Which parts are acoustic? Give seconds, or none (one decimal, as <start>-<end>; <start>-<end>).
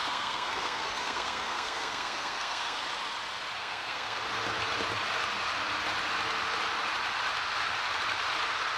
2.8-3.6; 4.2-8.8